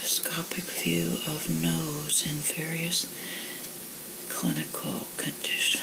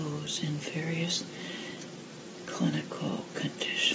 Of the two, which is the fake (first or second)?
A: first